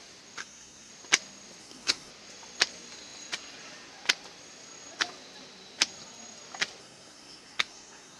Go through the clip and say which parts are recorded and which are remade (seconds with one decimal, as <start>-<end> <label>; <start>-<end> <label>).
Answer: 0.0-0.4 recorded; 0.4-0.9 remade; 0.9-1.6 recorded; 1.6-2.1 remade; 2.1-6.8 recorded; 6.8-8.2 remade